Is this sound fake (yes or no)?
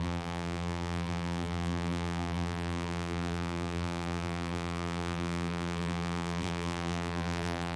yes